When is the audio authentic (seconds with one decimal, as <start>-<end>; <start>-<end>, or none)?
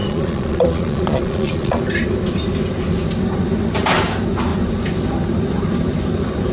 1.8-6.5